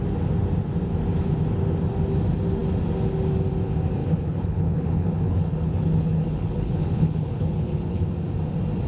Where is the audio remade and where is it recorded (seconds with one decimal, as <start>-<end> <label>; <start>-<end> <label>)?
0.0-4.0 recorded; 4.0-8.0 remade; 8.0-8.9 recorded